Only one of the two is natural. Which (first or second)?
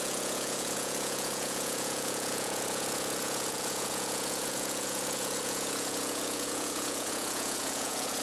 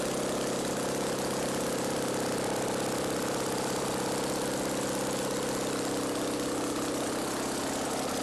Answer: second